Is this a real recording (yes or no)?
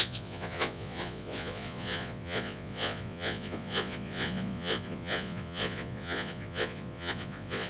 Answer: no